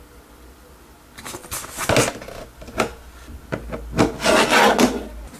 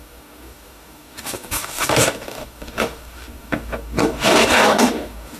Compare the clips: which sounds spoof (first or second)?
second